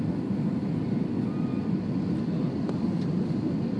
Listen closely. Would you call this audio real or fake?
real